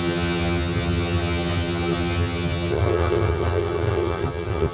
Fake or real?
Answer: fake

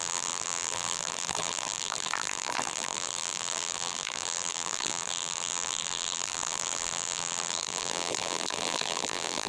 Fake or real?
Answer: fake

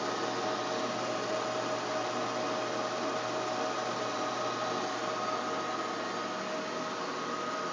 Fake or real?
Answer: real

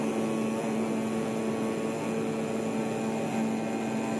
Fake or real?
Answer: real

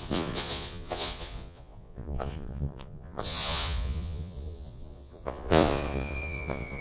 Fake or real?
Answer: fake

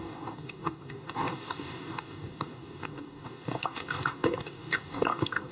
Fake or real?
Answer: fake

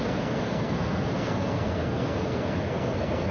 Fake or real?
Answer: fake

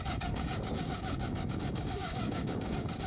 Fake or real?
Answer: fake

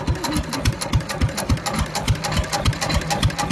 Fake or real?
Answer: real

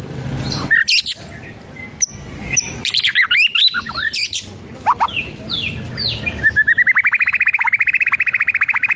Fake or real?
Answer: real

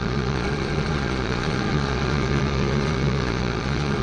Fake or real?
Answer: fake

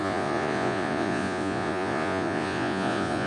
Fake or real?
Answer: fake